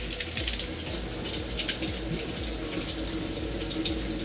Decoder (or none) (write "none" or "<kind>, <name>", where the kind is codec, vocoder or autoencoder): none